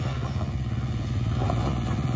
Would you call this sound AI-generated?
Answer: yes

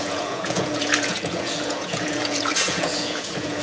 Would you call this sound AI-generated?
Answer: yes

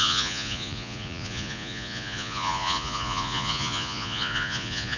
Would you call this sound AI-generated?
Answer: yes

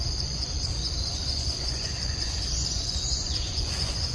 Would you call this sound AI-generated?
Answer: yes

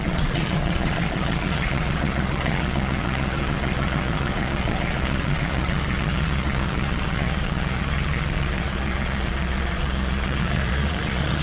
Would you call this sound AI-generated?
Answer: yes